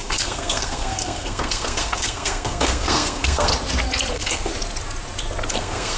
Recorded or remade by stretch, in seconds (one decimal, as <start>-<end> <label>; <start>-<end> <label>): 0.0-3.5 remade; 3.5-4.1 recorded; 4.1-4.5 remade; 4.5-5.5 recorded; 5.5-6.0 remade